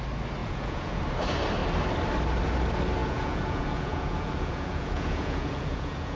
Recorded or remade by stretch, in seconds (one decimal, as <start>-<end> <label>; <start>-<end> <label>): 0.0-0.4 recorded; 0.4-1.0 remade; 1.0-3.0 recorded; 3.0-6.2 remade